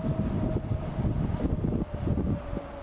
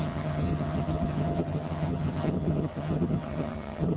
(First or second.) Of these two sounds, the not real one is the second